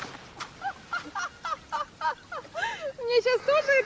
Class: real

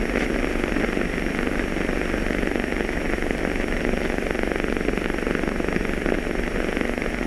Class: real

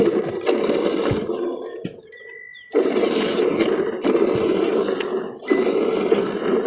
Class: real